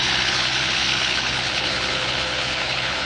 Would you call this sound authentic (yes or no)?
no